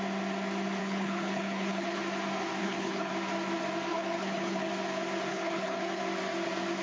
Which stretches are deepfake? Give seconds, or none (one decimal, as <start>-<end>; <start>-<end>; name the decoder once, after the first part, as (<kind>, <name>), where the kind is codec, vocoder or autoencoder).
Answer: 0.8-2.0 (codec, HILCodec); 2.6-3.1; 3.9-4.7; 5.3-6.0